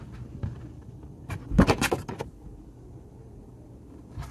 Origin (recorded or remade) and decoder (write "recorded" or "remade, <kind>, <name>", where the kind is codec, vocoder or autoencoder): recorded